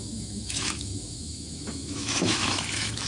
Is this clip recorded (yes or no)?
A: no